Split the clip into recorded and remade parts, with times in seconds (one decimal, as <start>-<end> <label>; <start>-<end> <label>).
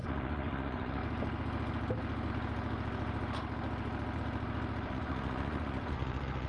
0.0-1.0 remade; 1.0-4.9 recorded; 4.9-6.5 remade